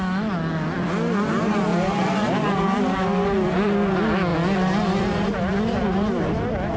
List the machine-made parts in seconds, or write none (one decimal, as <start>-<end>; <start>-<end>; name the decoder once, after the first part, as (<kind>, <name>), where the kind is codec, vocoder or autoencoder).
1.7-2.6 (vocoder, BigVGAN v2); 4.3-5.0